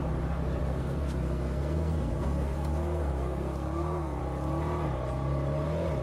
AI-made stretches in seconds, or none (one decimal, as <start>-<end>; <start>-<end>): 0.6-4.2